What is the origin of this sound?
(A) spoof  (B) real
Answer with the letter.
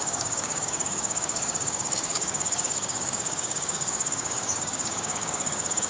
A